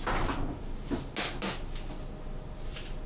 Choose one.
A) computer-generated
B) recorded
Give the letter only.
B